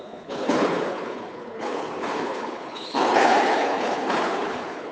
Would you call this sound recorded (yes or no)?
no